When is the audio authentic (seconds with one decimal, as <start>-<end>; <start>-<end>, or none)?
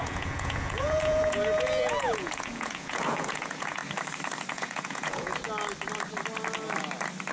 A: 3.8-4.5; 5.3-7.3